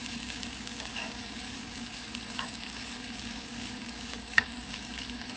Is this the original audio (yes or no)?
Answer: no